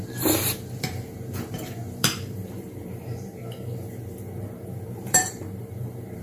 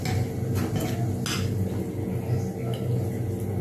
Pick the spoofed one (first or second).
first